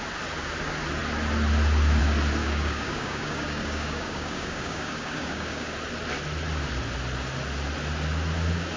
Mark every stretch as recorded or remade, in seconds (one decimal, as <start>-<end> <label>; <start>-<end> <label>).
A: 0.0-2.4 recorded; 2.4-5.7 remade; 5.7-8.8 recorded